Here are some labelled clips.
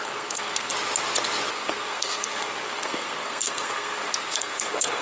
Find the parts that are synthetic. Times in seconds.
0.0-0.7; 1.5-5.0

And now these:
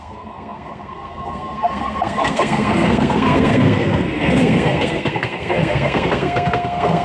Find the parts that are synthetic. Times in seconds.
0.0-7.0

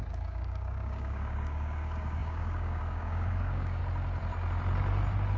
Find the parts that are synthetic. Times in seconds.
0.0-3.8

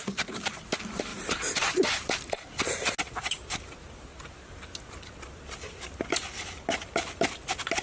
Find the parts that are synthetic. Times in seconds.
0.0-4.1; 7.3-7.8